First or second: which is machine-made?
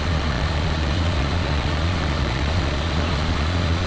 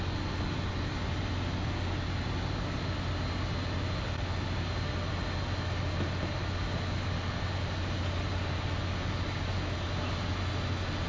first